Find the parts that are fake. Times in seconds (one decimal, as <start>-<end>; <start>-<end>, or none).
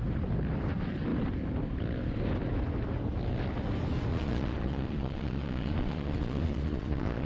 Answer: 4.1-7.3